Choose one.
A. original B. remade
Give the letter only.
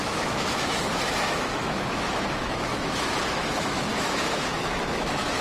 B